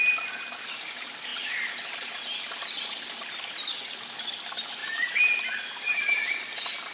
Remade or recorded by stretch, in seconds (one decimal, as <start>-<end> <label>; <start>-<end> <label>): 0.0-6.9 recorded